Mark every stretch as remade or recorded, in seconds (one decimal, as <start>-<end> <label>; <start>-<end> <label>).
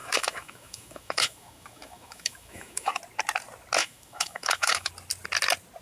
0.0-3.0 remade; 3.0-3.8 recorded; 3.8-4.9 remade; 4.9-5.8 recorded